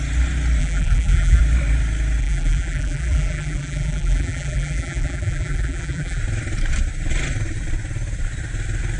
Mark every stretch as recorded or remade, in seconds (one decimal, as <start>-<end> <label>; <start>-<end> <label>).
0.0-0.6 recorded; 0.6-1.4 remade; 1.4-2.2 recorded; 2.2-6.2 remade; 6.2-9.0 recorded